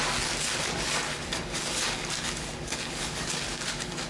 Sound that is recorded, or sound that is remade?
remade